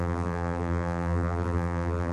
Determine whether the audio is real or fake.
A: fake